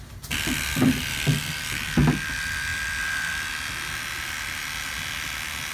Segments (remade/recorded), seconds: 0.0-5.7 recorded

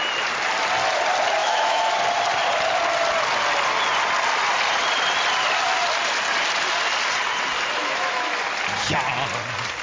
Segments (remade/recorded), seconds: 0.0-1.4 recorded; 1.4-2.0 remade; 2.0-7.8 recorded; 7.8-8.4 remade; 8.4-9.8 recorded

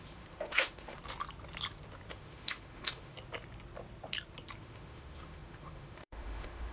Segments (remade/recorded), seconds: 0.0-1.0 remade; 1.0-2.1 recorded; 2.1-3.1 remade; 3.1-4.6 recorded; 4.6-6.7 remade